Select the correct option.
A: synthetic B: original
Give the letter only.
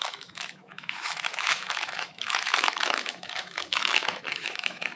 A